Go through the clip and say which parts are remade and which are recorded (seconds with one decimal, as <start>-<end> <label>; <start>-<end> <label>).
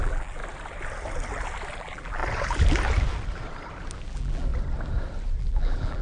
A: 0.0-0.4 remade; 0.4-1.8 recorded; 1.8-2.2 remade; 2.2-4.1 recorded; 4.1-4.5 remade; 4.5-5.4 recorded; 5.4-6.0 remade